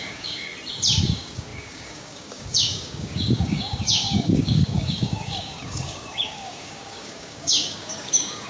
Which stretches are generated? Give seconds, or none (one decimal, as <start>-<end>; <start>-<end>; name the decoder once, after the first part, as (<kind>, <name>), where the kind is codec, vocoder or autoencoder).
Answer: 0.0-0.5 (codec, DAC); 1.0-8.5